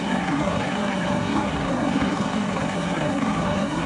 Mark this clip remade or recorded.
remade